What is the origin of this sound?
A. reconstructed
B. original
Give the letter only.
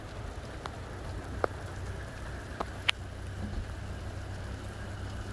B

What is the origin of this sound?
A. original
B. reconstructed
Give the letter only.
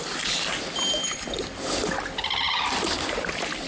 A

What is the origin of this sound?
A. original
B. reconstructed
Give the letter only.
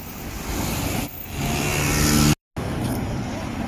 A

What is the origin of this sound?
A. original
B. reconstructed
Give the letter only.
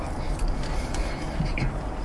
B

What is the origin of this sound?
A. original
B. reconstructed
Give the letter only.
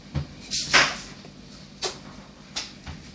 A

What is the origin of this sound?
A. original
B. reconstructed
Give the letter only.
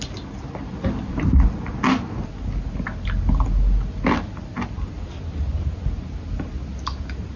A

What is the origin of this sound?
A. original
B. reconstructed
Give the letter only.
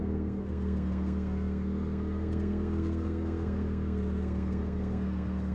B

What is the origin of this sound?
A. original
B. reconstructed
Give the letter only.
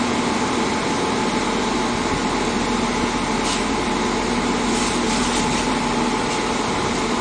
A